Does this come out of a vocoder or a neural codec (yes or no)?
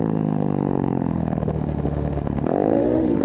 yes